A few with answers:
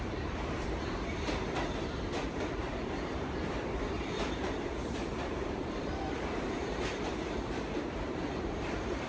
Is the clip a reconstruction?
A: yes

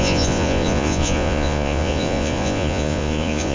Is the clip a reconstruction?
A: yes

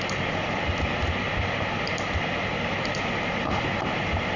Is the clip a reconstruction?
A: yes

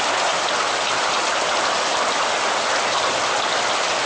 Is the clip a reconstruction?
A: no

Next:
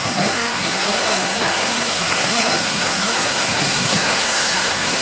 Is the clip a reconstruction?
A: yes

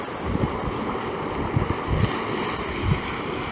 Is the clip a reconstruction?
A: no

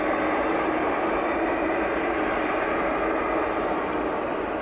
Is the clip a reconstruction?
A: no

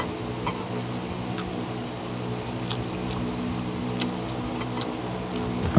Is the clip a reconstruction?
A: no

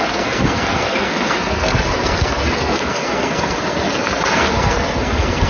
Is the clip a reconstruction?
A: yes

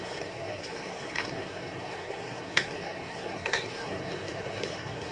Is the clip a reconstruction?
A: yes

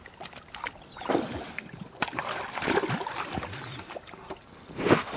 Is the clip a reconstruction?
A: no